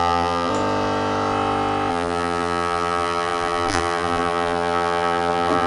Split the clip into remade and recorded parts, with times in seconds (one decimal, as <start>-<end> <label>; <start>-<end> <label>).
0.0-0.5 remade; 0.5-1.9 recorded; 1.9-5.7 remade